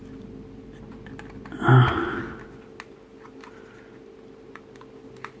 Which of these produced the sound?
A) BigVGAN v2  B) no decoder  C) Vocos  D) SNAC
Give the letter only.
B